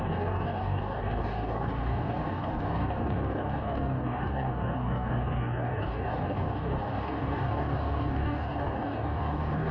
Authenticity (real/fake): fake